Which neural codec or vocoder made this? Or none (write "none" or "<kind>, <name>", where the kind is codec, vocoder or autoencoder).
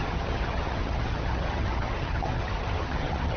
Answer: vocoder, HiFi-GAN